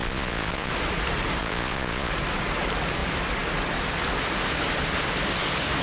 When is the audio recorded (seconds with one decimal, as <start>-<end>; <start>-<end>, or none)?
0.7-1.4; 2.1-5.8